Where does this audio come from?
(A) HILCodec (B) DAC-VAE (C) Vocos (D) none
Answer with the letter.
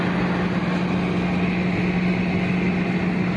D